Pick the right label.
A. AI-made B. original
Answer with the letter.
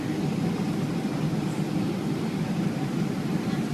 B